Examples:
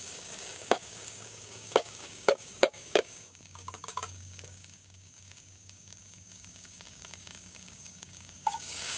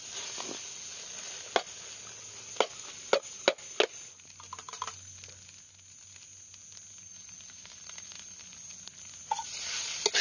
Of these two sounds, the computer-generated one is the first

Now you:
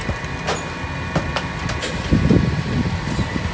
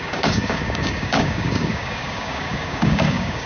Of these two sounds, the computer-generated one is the second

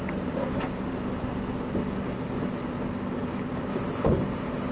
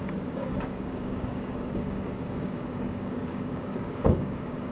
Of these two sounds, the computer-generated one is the second